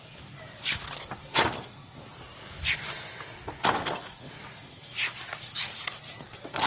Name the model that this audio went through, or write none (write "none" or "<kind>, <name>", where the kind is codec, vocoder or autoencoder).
none